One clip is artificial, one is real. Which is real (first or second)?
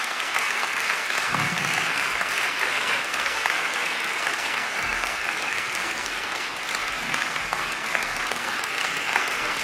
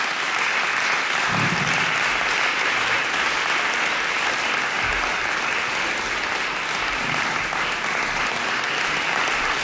second